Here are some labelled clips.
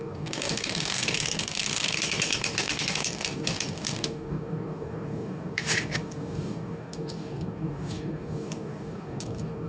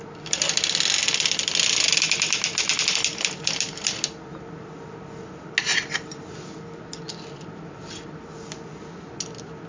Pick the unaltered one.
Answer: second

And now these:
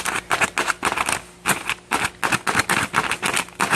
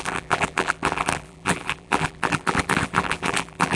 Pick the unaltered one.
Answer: first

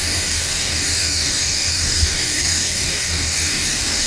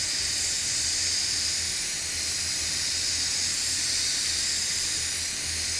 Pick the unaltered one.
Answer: second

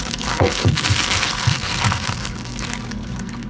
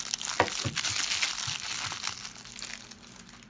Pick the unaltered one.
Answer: second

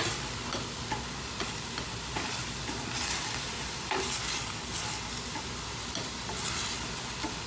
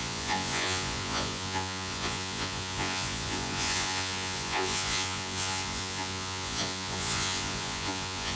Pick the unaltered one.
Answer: first